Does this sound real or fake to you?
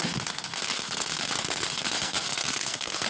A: fake